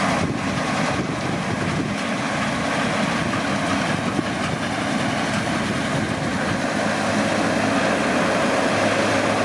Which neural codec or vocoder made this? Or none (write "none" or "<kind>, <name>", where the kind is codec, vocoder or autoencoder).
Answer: none